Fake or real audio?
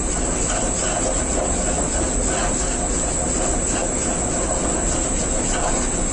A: real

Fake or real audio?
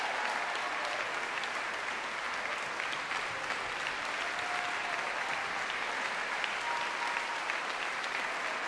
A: real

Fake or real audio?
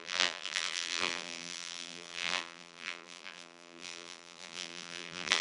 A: fake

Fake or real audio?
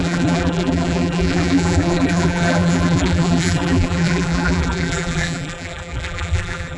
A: fake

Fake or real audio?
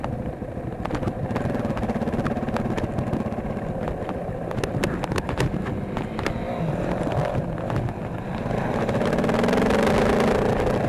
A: real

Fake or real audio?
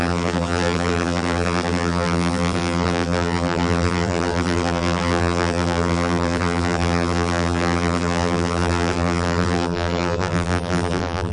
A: fake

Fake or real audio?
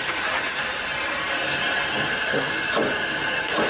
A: fake